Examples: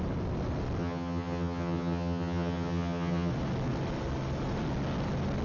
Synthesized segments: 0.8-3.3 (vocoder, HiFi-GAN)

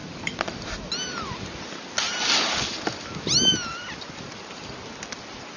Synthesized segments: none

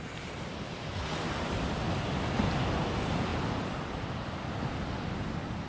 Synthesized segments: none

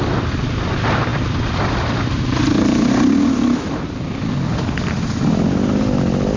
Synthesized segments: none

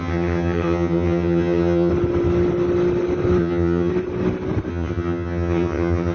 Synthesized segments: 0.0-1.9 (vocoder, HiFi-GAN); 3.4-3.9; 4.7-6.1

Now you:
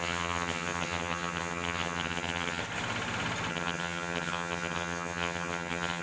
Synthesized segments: 0.0-2.6 (vocoder, HiFi-GAN); 3.5-6.0

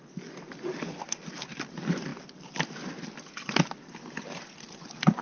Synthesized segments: none

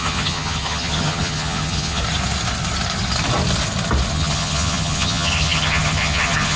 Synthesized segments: 0.0-2.0 (vocoder, HiFi-GAN); 4.1-6.6